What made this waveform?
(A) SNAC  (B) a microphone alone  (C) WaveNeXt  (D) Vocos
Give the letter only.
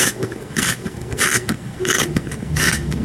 A